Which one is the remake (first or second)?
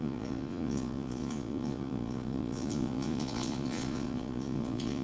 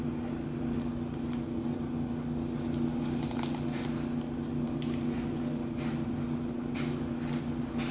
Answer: first